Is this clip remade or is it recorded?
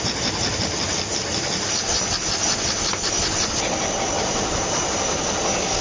recorded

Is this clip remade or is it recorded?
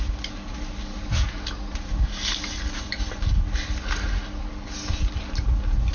recorded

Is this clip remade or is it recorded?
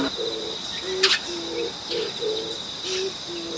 recorded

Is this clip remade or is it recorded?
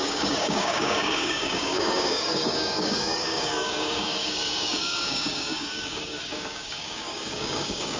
remade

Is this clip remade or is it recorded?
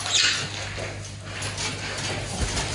recorded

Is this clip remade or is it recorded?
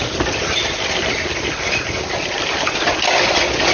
recorded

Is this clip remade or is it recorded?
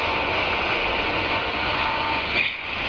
remade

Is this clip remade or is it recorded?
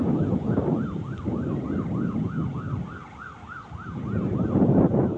recorded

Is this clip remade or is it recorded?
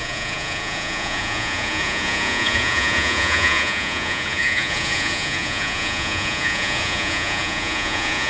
remade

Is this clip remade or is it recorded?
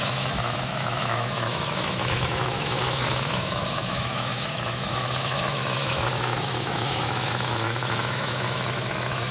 remade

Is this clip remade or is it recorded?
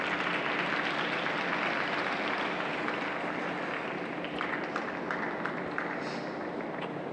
recorded